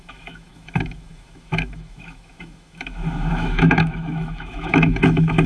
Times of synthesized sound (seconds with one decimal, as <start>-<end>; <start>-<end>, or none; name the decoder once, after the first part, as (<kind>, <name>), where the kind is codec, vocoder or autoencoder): 0.0-5.5 (autoencoder, DAC-VAE)